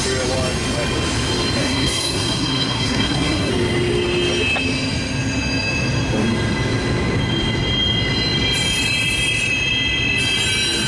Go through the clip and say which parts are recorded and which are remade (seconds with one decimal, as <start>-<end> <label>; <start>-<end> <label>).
0.0-1.6 recorded; 1.6-3.5 remade; 3.5-10.9 recorded